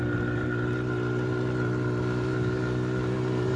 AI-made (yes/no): no